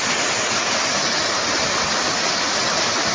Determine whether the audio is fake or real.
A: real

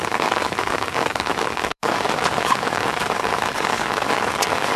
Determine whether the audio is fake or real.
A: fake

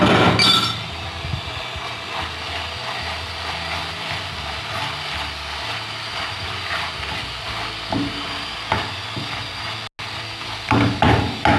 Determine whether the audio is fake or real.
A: real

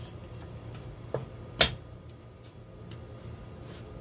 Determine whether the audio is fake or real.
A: real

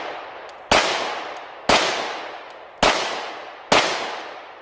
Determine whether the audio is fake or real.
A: real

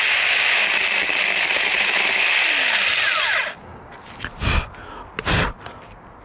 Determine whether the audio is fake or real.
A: real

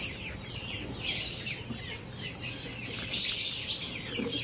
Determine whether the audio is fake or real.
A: real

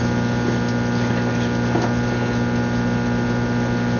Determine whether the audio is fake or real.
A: real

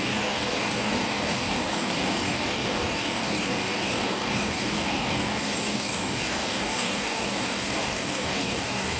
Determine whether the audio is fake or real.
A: fake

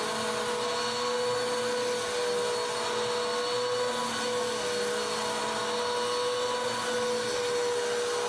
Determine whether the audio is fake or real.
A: real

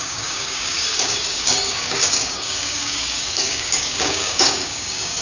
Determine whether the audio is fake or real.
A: fake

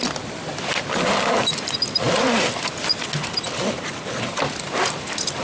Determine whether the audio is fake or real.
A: real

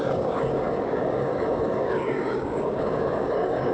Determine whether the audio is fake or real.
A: fake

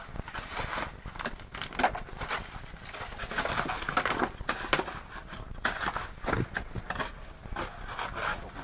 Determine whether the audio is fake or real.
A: real